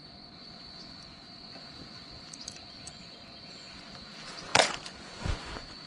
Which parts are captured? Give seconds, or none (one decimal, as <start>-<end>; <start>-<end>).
none